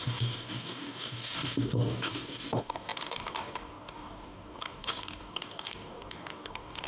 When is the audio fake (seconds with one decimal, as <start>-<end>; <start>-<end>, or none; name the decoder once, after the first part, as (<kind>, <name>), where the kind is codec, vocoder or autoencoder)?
0.0-6.9 (codec, DAC)